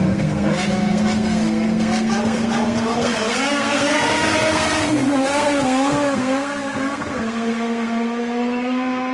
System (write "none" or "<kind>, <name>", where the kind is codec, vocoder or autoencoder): codec, SNAC